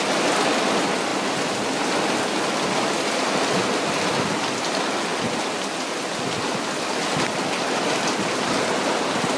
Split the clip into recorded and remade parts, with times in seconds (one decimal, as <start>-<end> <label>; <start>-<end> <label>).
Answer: 0.0-9.4 recorded